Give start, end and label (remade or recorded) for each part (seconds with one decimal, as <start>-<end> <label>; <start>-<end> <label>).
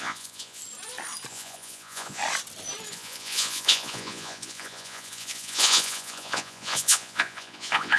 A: 0.0-0.6 remade; 0.6-1.3 recorded; 1.3-2.2 remade; 2.2-2.9 recorded; 2.9-8.0 remade